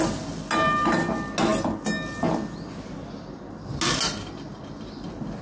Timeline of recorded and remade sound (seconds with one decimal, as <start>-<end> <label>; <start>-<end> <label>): 0.0-5.4 recorded